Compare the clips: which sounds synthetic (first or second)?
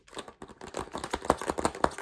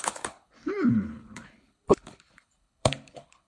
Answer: second